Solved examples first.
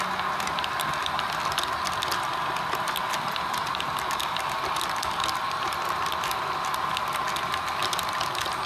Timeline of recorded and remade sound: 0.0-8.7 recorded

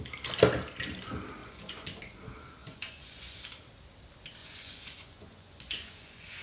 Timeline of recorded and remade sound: 0.0-1.4 recorded; 1.4-2.0 remade; 2.0-2.6 recorded; 2.6-3.4 remade; 3.4-4.4 recorded; 4.4-6.4 remade

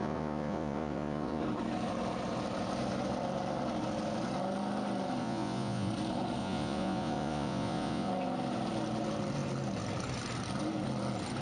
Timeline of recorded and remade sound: 0.0-1.4 remade; 1.4-5.2 recorded; 5.2-5.9 remade; 5.9-6.4 recorded; 6.4-8.1 remade; 8.1-11.4 recorded

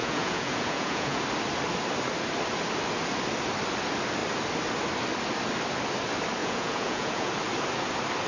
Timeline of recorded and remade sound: 0.0-1.2 remade; 1.2-6.4 recorded; 6.4-7.3 remade; 7.3-8.3 recorded

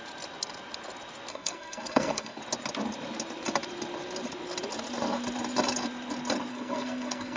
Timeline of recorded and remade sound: 0.0-1.3 recorded; 1.3-2.4 remade; 2.4-6.5 recorded; 6.5-7.4 remade

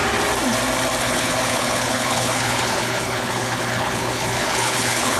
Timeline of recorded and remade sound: 0.0-1.0 recorded; 1.0-5.2 remade